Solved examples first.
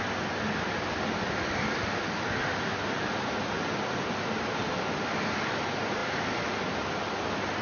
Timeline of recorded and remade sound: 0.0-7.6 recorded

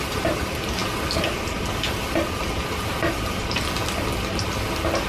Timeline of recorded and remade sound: 0.0-5.1 recorded